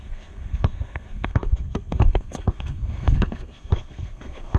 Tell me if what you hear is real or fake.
fake